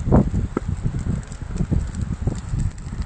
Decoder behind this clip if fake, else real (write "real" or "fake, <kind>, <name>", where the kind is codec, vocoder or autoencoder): real